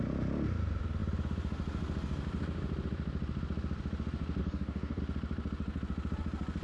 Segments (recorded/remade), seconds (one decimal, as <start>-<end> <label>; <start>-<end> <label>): 0.0-4.4 recorded; 4.4-5.0 remade; 5.0-6.6 recorded